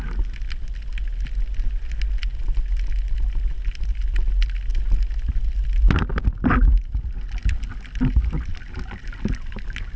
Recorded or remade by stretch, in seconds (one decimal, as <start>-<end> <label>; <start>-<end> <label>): 0.0-10.0 recorded